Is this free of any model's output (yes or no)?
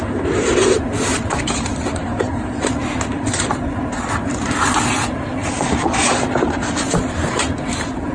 no